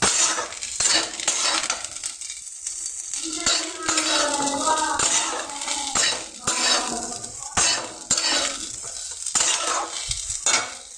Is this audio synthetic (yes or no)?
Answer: no